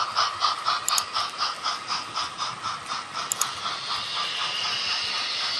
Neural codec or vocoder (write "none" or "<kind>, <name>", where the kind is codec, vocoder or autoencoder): none